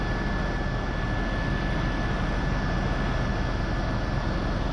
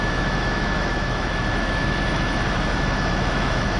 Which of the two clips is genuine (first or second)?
first